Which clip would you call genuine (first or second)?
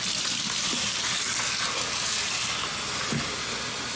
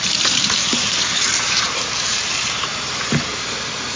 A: first